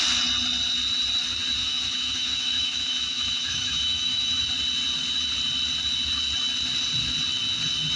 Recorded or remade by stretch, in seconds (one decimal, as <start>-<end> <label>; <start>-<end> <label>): 0.0-1.6 recorded; 1.6-4.4 remade; 4.4-8.0 recorded